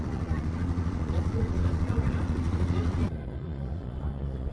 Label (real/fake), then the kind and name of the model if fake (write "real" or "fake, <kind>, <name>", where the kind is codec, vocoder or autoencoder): fake, vocoder, Vocos